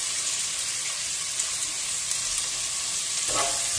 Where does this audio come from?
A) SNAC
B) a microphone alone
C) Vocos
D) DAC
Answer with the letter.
B